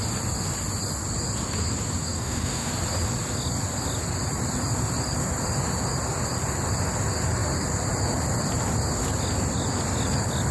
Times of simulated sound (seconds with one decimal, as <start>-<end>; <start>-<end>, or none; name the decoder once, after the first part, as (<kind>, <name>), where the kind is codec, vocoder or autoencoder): 2.0-2.7 (codec, DAC)